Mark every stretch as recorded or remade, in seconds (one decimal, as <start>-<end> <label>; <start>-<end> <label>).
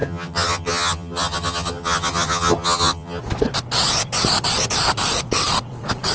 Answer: 0.0-3.2 remade; 3.2-6.1 recorded